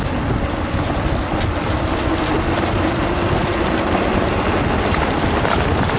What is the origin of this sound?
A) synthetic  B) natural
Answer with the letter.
B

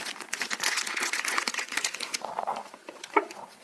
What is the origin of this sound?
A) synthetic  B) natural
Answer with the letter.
A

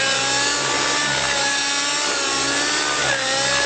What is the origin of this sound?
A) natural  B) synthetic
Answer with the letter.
A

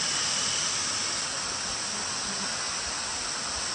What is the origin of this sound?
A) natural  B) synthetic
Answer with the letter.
A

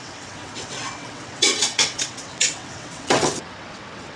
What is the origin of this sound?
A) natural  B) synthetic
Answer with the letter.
B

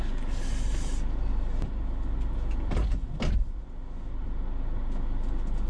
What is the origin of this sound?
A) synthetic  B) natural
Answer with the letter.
B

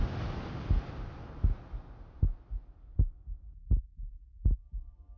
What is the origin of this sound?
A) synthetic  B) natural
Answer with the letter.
B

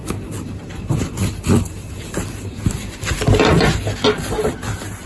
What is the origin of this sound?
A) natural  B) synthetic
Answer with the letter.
A